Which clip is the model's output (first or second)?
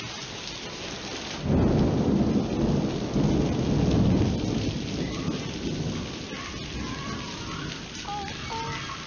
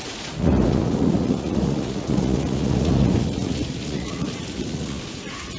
second